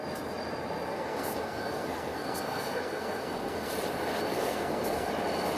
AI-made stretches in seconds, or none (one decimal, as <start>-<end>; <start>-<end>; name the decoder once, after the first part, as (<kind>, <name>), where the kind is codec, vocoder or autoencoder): 0.9-3.7 (codec, SNAC); 4.3-5.1